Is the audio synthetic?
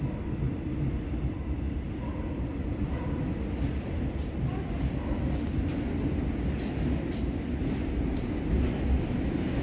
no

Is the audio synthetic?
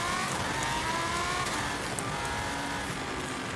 no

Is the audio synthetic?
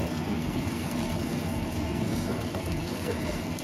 yes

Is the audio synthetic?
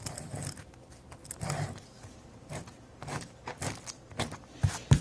no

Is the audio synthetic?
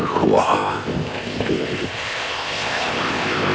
yes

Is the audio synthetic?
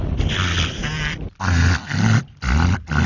no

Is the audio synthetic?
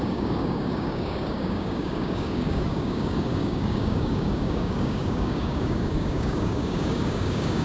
yes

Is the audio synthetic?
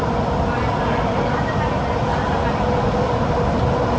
no